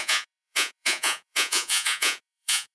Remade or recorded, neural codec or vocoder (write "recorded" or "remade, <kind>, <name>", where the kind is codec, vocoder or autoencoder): remade, vocoder, Vocos